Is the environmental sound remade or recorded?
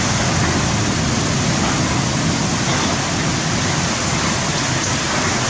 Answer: recorded